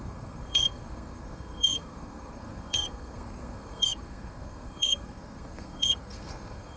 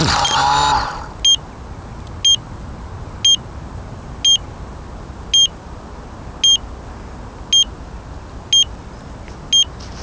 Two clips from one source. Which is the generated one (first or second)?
first